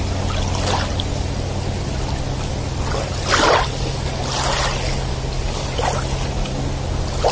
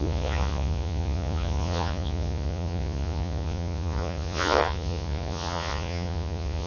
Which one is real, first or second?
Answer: first